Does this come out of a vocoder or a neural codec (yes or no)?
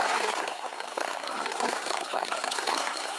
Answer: yes